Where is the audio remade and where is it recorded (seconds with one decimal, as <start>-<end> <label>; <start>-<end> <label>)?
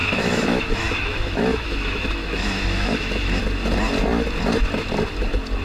0.0-3.4 remade; 3.4-5.6 recorded